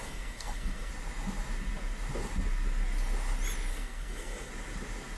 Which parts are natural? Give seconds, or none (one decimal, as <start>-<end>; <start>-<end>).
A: 0.9-3.7; 4.5-5.2